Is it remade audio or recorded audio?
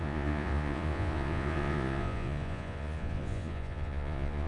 remade